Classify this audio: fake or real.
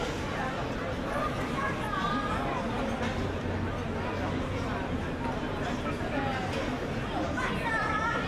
real